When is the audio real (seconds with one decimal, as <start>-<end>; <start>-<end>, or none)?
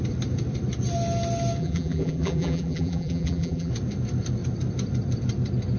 0.0-1.6; 3.7-5.8